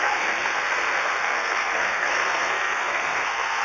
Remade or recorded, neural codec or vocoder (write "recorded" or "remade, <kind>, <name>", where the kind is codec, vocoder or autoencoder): remade, codec, SNAC